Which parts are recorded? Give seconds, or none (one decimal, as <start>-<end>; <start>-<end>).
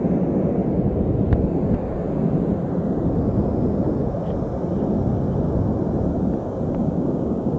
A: 0.0-6.8